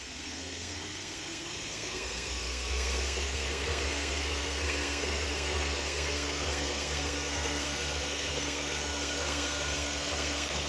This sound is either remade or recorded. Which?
remade